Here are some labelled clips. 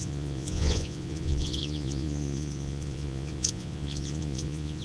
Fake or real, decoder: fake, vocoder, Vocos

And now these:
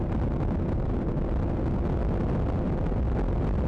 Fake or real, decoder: real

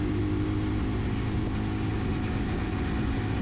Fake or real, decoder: real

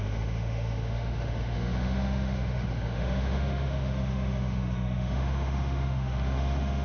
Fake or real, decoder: fake, autoencoder, DAC-VAE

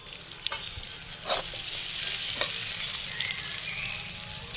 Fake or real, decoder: real